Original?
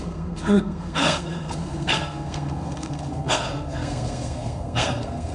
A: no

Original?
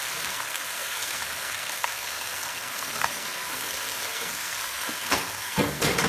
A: no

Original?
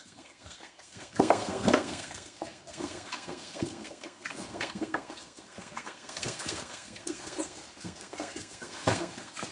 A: no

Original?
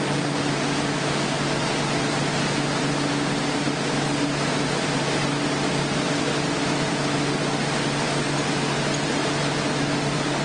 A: yes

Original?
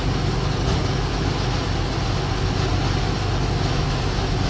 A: yes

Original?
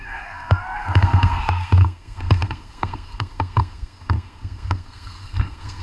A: no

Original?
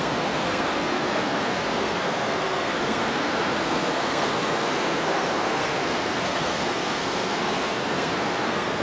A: no